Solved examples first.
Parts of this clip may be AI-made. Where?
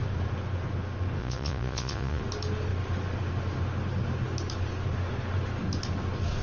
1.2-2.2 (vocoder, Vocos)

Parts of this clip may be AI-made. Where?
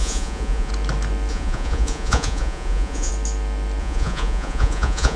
0.0-0.7 (vocoder, Vocos); 1.3-3.1; 3.8-5.2